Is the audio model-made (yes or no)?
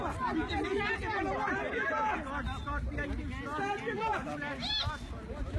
no